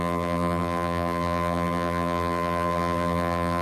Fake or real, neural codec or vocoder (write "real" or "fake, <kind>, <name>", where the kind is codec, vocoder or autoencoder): fake, vocoder, BigVGAN v2